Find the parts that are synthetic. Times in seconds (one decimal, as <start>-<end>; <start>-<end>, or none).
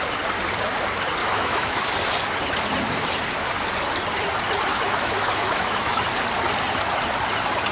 1.2-1.9; 4.7-6.0